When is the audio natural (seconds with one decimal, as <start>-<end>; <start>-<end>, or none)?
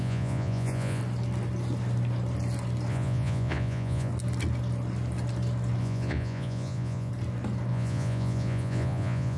1.0-2.9; 4.1-5.8; 7.1-7.7